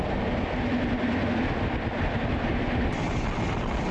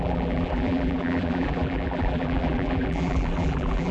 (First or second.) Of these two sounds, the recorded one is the first